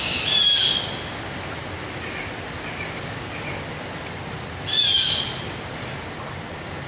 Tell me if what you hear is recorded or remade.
recorded